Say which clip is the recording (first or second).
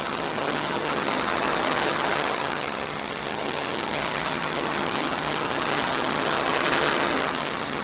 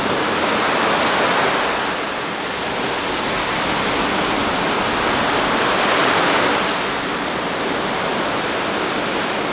second